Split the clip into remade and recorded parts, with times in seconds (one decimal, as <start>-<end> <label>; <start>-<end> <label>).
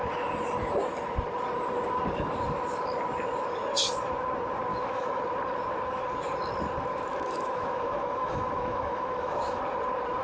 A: 0.0-4.7 recorded; 4.7-5.2 remade; 5.2-7.1 recorded; 7.1-9.6 remade; 9.6-10.2 recorded